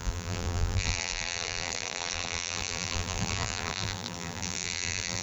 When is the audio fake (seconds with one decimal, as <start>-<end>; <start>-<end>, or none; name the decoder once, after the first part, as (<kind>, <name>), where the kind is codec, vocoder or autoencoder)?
0.0-5.2 (vocoder, BigVGAN v2)